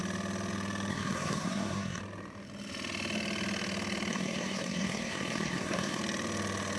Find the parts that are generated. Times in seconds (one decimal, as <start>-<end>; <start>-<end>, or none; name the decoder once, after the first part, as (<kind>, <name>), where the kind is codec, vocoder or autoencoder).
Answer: 0.9-2.0 (codec, SNAC); 4.1-6.0